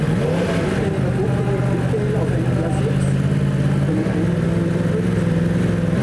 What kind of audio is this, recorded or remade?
recorded